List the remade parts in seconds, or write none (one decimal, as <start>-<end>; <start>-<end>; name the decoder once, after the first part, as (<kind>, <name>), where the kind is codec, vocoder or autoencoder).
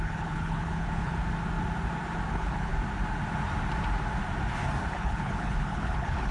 0.0-1.1 (codec, HILCodec); 2.3-2.7; 4.9-6.3